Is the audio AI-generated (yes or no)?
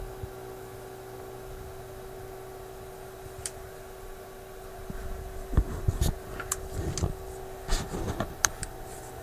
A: no